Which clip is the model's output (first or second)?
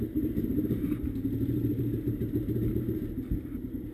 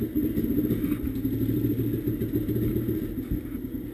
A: first